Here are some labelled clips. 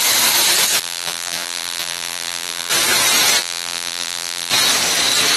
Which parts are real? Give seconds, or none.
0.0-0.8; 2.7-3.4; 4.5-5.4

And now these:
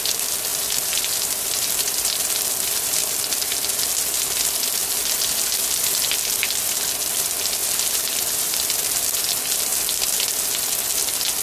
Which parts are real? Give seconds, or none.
0.0-0.5; 3.7-7.6; 9.2-9.7; 10.3-11.4

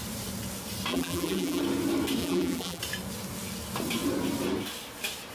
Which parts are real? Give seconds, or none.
0.0-0.9; 1.6-2.2; 2.8-5.3

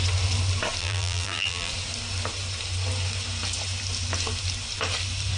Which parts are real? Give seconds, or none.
0.0-0.8; 1.7-5.4